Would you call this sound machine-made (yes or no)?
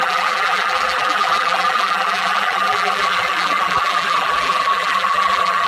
yes